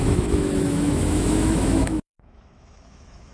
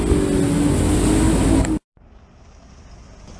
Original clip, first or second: second